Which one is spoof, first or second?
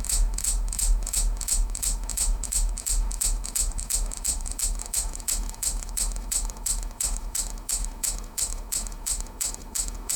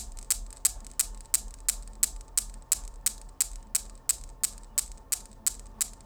first